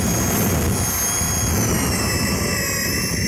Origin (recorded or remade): recorded